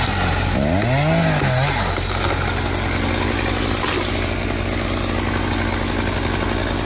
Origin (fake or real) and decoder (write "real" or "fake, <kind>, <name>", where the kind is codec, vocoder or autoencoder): real